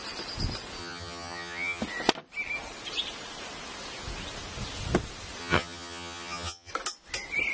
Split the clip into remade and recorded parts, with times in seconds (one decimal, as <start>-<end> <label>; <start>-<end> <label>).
0.0-0.8 recorded; 0.8-1.8 remade; 1.8-5.4 recorded; 5.4-6.7 remade; 6.7-7.5 recorded